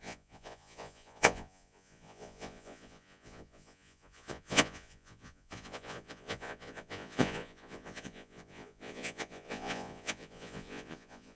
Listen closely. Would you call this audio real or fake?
fake